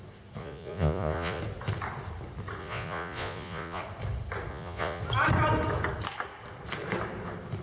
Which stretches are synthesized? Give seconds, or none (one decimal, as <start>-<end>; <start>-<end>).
0.4-1.4; 2.6-3.8; 4.5-5.0